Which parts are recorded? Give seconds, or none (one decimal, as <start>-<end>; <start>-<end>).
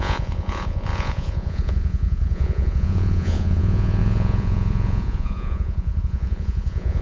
none